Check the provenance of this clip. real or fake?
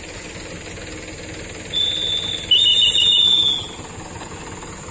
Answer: real